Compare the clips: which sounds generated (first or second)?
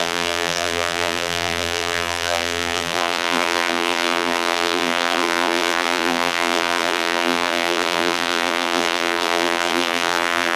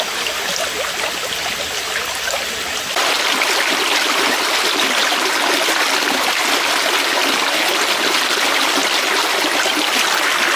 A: first